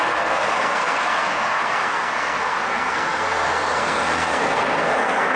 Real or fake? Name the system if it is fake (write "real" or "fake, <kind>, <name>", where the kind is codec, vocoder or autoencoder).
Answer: fake, codec, SNAC